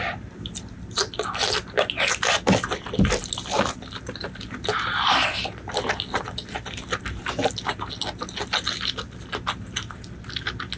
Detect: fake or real real